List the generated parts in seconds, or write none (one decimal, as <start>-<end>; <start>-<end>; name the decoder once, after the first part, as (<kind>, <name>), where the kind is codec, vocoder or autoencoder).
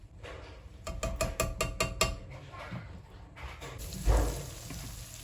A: 0.0-0.9 (vocoder, BigVGAN v2)